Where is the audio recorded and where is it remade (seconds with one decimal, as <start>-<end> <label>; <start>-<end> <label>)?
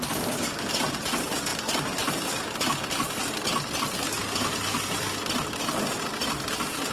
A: 0.0-6.9 recorded